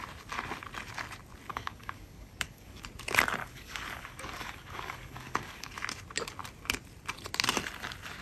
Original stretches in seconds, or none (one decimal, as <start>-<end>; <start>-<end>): 0.0-1.5; 2.8-3.4; 5.7-8.2